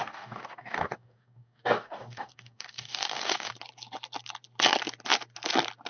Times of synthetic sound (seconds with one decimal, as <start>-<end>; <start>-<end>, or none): 0.0-3.5

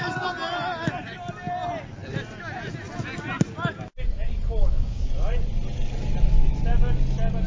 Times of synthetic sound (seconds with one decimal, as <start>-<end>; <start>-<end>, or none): 4.6-5.1

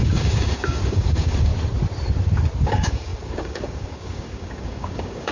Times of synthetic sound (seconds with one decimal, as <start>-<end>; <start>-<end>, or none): 0.0-1.5; 2.6-5.3

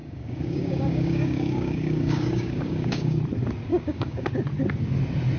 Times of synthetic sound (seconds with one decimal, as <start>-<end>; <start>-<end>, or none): 0.0-3.2; 3.7-4.3

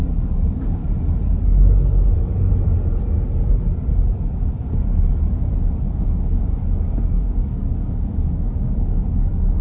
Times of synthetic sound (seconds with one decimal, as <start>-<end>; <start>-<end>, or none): 0.0-0.8; 5.6-9.6

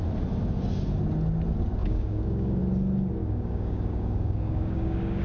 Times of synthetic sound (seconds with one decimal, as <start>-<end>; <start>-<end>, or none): 1.8-2.6; 3.2-5.2

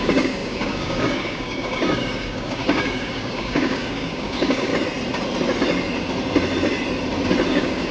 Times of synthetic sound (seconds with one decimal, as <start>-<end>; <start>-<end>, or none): 0.0-4.7; 7.5-7.9